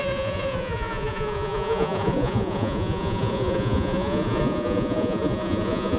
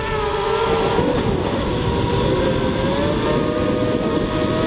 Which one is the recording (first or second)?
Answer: second